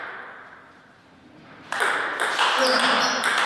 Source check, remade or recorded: recorded